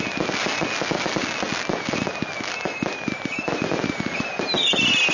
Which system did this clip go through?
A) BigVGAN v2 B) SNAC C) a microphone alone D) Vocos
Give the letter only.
C